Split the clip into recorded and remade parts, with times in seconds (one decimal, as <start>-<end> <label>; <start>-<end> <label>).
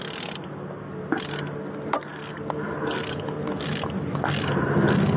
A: 0.0-2.1 recorded; 2.1-3.3 remade; 3.3-5.2 recorded